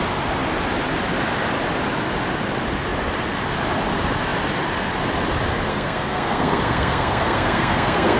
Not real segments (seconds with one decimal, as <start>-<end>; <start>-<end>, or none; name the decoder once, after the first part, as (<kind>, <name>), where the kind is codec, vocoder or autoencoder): 5.7-8.2 (codec, SNAC)